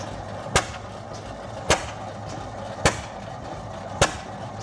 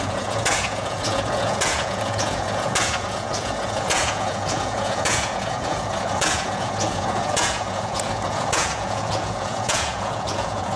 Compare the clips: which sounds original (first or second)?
first